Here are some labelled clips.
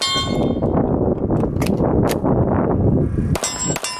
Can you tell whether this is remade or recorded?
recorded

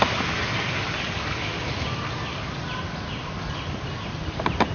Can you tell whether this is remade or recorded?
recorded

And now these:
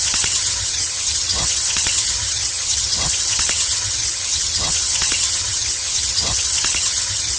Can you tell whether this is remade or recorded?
remade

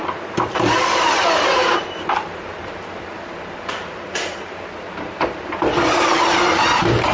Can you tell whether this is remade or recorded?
remade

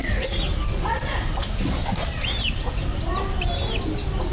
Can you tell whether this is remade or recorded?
recorded